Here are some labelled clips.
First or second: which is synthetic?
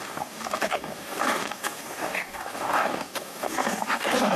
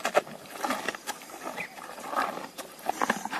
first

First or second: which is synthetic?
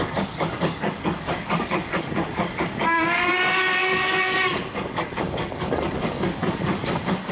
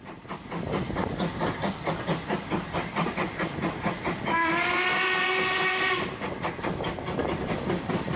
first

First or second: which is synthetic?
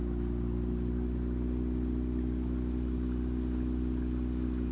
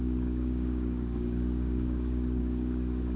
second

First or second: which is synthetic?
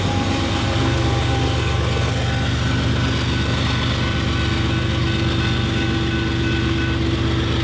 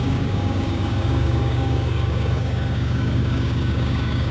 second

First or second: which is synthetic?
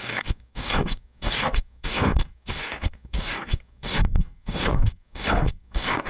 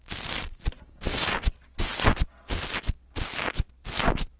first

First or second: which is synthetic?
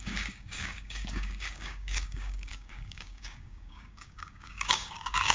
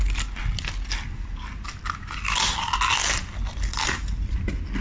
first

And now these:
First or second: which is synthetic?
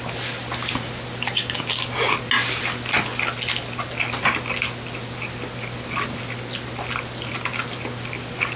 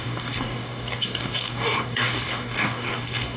second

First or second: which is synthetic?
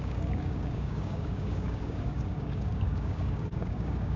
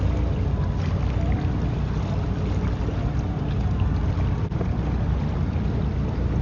first